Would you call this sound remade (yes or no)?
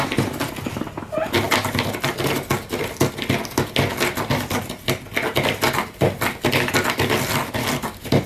no